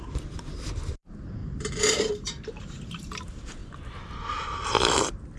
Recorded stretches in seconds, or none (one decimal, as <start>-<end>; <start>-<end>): 1.4-2.1; 3.6-4.9